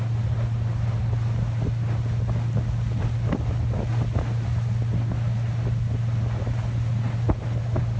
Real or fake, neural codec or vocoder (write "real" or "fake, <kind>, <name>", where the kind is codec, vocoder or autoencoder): real